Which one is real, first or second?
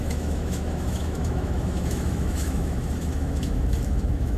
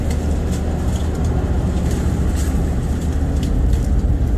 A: second